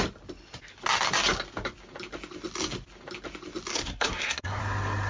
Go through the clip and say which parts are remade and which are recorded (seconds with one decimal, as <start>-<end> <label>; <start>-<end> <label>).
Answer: 0.0-3.7 recorded; 3.7-4.6 remade; 4.6-5.1 recorded